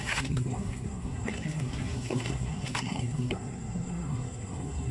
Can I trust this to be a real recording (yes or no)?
no